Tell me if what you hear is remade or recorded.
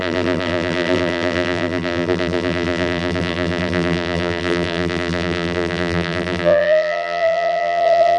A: remade